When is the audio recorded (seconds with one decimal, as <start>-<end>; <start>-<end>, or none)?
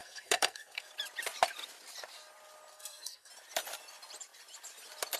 0.9-2.7; 3.3-5.2